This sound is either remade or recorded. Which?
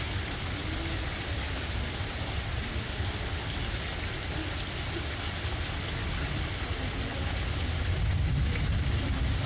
recorded